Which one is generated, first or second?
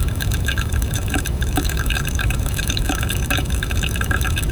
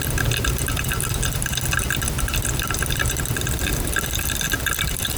first